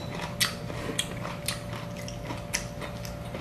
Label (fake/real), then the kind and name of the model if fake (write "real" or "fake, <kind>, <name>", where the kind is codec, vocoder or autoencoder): real